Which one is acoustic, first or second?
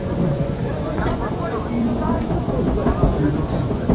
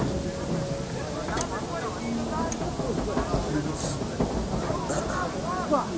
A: second